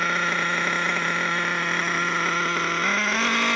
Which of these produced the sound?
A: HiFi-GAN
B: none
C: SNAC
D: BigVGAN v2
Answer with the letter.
B